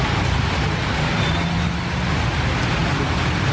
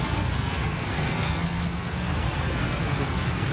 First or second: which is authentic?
first